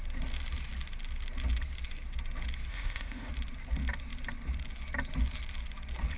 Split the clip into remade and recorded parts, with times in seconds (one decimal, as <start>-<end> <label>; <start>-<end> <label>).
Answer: 0.0-2.7 recorded; 2.7-3.3 remade; 3.3-6.2 recorded